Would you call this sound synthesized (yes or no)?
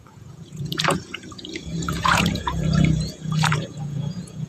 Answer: yes